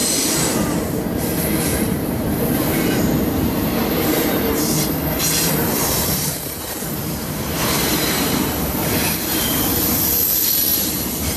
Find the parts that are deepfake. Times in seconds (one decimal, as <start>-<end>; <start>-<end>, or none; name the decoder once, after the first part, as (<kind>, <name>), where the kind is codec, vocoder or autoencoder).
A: 0.0-4.5 (vocoder, BigVGAN v2); 5.2-9.6